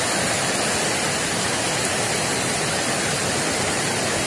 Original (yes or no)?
yes